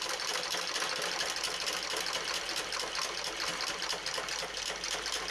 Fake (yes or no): no